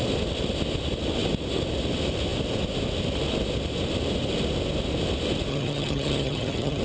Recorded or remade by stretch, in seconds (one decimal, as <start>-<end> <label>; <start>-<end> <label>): 0.0-5.5 recorded; 5.5-6.8 remade